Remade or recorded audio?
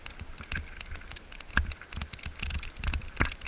recorded